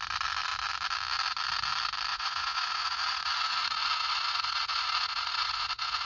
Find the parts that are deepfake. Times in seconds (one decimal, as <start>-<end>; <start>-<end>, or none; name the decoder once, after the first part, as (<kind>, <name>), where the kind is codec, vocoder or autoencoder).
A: 2.1-6.1 (vocoder, Vocos)